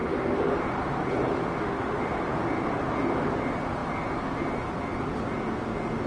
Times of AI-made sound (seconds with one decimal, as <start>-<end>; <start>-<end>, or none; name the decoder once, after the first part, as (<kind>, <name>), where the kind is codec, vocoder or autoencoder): 0.0-0.5 (autoencoder, DAC-VAE); 1.3-1.9